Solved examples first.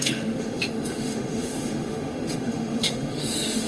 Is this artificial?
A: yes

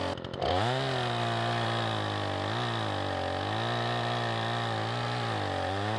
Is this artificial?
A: no